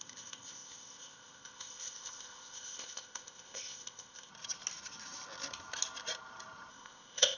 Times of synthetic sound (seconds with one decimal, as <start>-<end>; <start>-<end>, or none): 0.0-4.3; 6.7-7.4